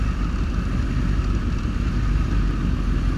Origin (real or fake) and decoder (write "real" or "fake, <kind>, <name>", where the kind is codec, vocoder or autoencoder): real